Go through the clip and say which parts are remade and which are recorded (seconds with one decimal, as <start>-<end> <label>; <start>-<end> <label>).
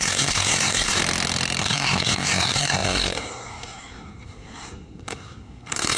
0.0-1.0 remade; 1.0-1.6 recorded; 1.6-6.0 remade